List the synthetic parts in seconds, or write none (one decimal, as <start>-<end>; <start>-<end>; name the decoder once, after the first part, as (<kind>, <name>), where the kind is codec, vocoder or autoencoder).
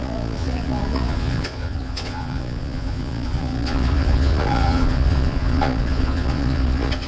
0.0-7.1 (vocoder, Vocos)